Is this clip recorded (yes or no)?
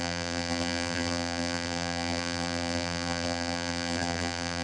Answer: no